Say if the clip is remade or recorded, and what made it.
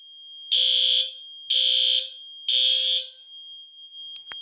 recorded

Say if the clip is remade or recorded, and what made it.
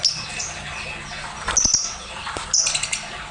recorded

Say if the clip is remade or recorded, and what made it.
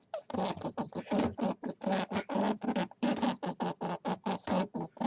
recorded